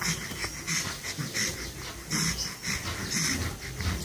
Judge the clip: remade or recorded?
recorded